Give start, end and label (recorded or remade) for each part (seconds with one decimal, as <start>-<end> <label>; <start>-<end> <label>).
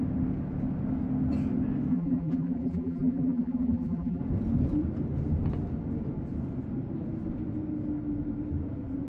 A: 0.0-1.9 recorded; 1.9-4.2 remade; 4.2-9.1 recorded